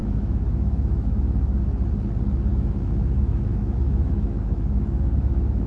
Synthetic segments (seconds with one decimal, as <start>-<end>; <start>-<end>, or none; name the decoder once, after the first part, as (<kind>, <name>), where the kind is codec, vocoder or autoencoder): 0.0-1.2 (autoencoder, DAC-VAE); 2.5-5.7